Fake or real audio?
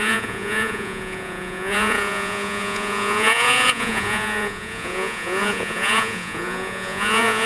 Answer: fake